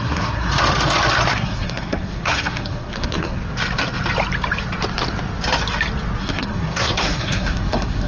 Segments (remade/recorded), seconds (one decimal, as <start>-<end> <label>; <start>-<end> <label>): 0.0-0.5 remade; 0.5-1.3 recorded; 1.3-3.4 remade; 3.4-6.2 recorded; 6.2-8.1 remade